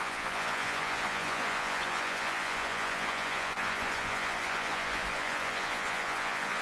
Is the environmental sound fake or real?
fake